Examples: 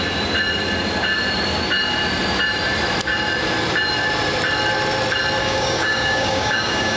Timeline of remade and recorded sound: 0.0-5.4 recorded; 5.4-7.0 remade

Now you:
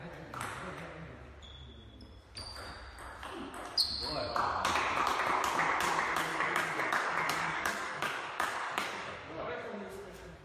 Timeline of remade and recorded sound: 0.0-6.3 recorded; 6.3-10.4 remade

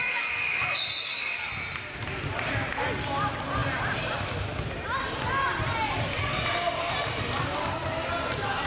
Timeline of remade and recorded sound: 0.0-1.5 remade; 1.5-8.7 recorded